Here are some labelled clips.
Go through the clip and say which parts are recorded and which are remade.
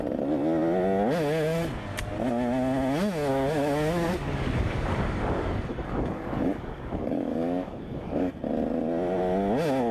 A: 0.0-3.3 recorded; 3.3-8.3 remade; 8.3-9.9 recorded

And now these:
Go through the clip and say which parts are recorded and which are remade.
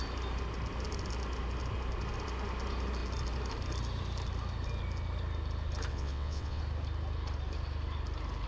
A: 0.0-5.9 recorded; 5.9-6.6 remade; 6.6-8.5 recorded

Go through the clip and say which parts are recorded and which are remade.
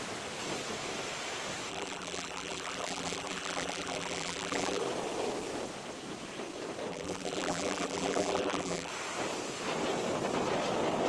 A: 0.0-1.7 recorded; 1.7-4.8 remade; 4.8-6.9 recorded; 6.9-8.9 remade; 8.9-11.1 recorded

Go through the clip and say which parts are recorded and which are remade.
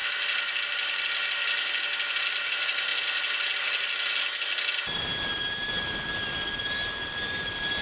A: 0.0-7.8 recorded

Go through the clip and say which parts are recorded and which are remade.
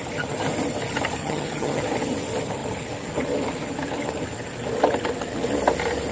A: 0.0-1.2 recorded; 1.2-1.8 remade; 1.8-6.1 recorded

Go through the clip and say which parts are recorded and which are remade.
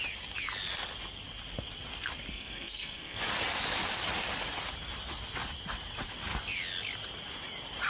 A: 0.0-2.3 recorded; 2.3-3.2 remade; 3.2-7.9 recorded